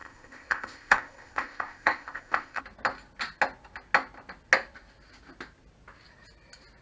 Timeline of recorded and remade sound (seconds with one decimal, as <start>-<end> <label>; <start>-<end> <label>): 0.0-2.6 remade; 2.6-6.8 recorded